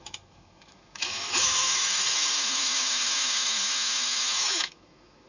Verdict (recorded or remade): remade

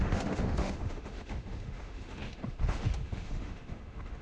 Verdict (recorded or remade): remade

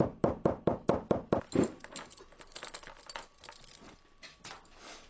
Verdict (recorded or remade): recorded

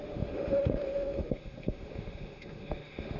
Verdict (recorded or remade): remade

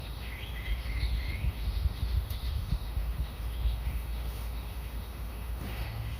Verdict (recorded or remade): remade